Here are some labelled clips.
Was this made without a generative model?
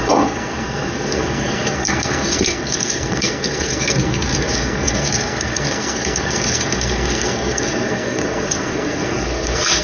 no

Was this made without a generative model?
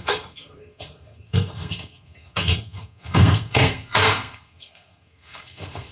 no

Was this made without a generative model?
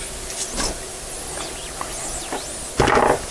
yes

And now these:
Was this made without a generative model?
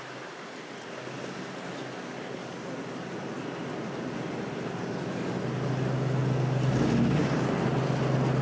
yes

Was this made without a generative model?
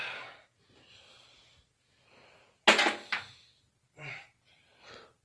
yes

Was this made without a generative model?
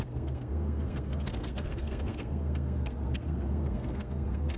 no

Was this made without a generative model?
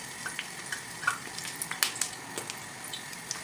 yes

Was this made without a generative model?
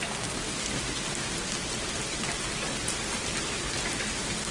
yes